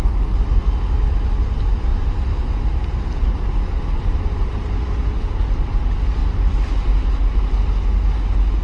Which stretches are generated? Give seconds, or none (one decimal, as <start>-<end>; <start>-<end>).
none